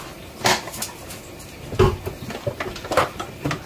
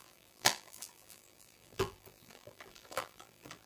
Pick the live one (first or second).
first